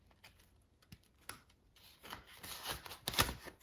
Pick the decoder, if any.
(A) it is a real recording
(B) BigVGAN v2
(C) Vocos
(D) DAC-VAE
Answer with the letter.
A